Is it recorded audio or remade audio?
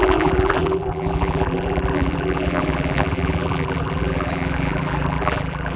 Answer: remade